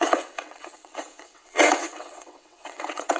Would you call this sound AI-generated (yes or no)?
yes